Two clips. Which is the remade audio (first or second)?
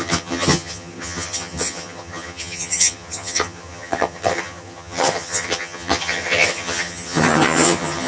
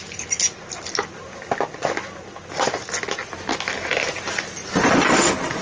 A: first